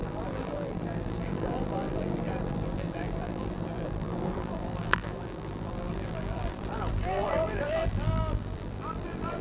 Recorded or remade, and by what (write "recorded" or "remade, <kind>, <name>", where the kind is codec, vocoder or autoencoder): remade, vocoder, BigVGAN v2